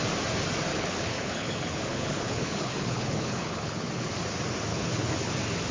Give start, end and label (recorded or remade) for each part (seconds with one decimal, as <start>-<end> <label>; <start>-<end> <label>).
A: 0.0-0.7 recorded; 0.7-4.1 remade; 4.1-4.7 recorded; 4.7-5.3 remade; 5.3-5.7 recorded